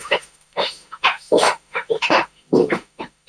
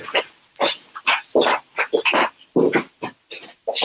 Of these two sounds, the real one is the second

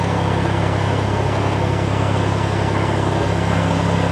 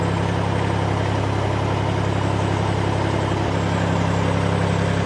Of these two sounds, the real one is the second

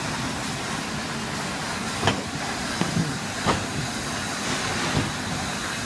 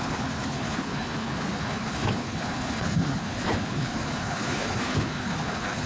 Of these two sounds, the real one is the first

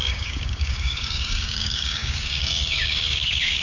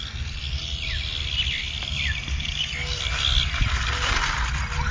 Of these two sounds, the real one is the second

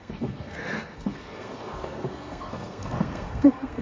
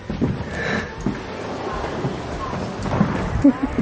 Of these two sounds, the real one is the second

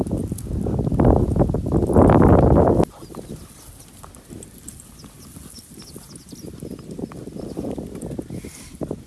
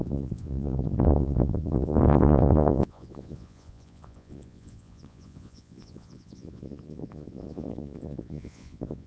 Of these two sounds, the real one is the first